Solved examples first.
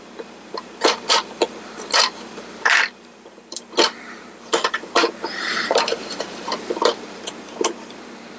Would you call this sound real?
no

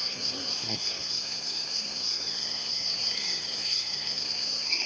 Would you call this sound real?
no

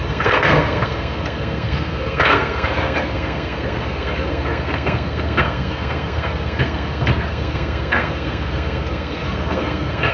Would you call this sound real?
no